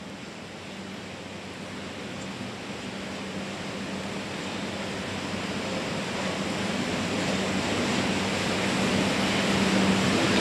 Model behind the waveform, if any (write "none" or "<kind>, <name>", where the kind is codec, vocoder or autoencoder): none